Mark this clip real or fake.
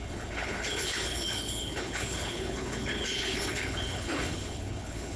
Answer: fake